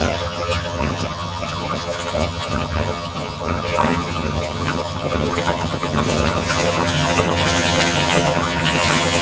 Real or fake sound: fake